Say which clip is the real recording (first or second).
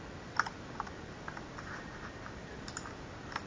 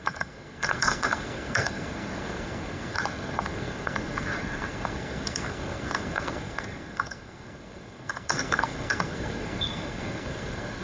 first